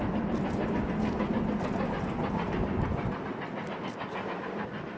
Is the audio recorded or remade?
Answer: recorded